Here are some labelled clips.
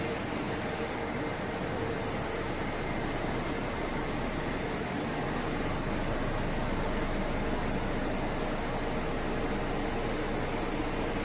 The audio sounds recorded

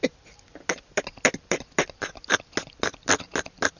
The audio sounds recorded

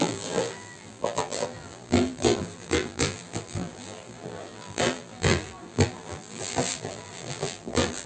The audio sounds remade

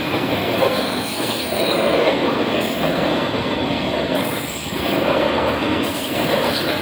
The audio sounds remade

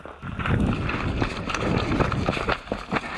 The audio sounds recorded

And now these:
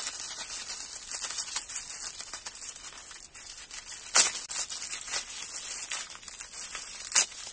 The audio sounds recorded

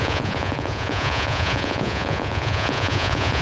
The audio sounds remade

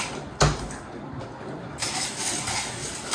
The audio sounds recorded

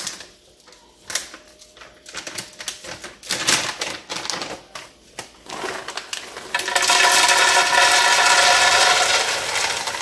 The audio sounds recorded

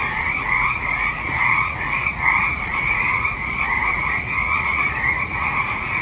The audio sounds remade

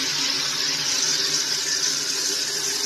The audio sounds recorded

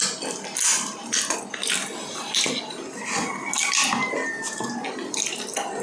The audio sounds recorded